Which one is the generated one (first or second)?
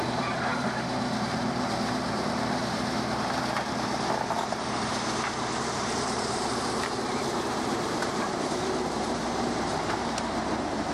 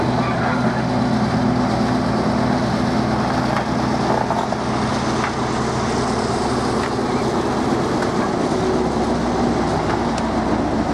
first